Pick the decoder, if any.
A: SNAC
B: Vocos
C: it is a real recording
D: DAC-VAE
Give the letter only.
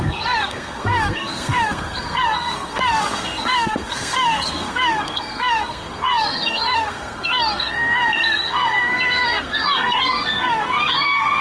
A